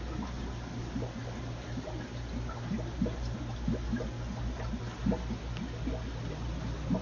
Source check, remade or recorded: recorded